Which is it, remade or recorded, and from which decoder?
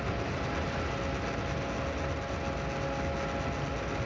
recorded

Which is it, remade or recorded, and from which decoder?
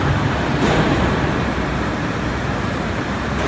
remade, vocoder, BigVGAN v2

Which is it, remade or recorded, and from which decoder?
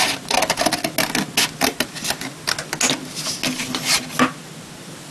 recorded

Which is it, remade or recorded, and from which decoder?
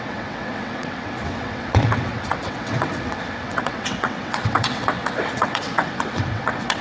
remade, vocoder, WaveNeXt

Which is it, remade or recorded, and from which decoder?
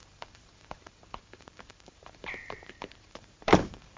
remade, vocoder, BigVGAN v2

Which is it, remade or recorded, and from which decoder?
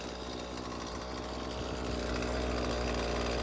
recorded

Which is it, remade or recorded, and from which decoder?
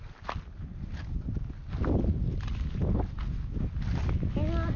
recorded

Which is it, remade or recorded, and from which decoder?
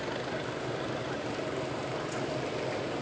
recorded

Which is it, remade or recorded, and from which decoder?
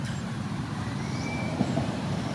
remade, vocoder, BigVGAN v2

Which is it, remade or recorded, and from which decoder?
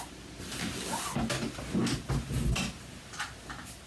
recorded